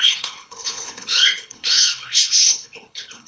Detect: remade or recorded remade